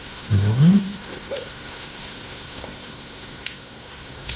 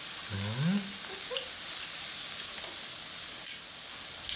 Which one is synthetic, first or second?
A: first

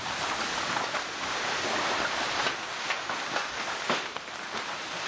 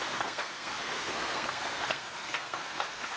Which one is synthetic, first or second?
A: second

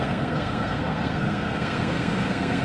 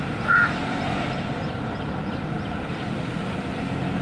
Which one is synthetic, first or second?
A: first